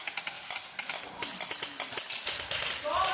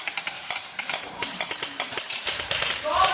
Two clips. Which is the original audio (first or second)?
first